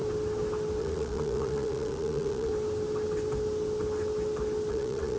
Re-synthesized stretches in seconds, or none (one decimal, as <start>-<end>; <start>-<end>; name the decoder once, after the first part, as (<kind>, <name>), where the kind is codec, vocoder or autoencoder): 0.8-2.5 (vocoder, Vocos); 4.7-5.2